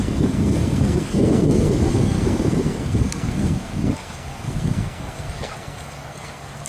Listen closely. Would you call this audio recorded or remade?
remade